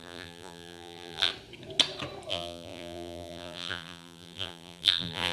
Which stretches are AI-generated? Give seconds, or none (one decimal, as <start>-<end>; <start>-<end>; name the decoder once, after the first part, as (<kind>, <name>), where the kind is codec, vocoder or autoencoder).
0.0-1.3 (vocoder, BigVGAN v2); 2.3-5.3